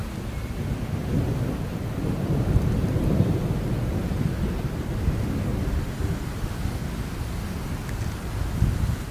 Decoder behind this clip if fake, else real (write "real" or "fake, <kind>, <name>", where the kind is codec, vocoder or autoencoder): real